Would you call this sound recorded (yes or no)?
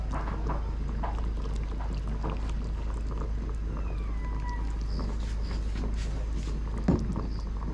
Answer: yes